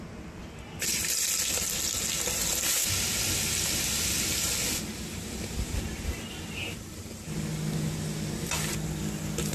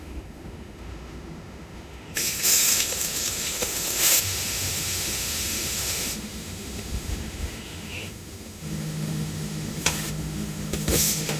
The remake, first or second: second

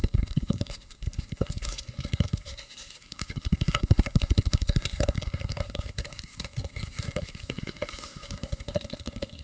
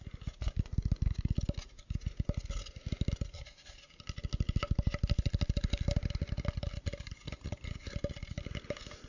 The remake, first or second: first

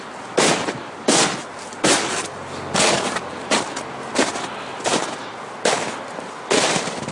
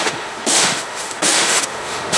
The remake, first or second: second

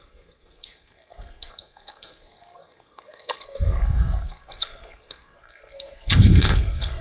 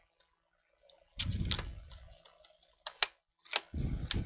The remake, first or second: first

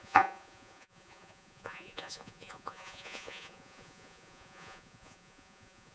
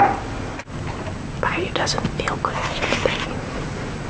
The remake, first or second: first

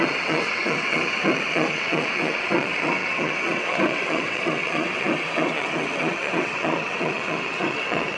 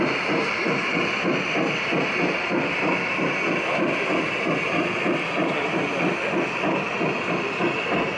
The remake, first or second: first